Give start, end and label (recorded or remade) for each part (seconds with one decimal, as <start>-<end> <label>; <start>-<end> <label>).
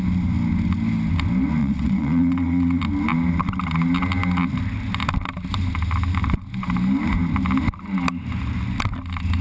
0.0-1.6 recorded; 1.6-2.8 remade; 2.8-9.4 recorded